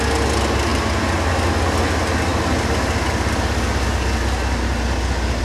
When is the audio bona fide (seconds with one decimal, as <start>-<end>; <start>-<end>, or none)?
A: 0.0-5.4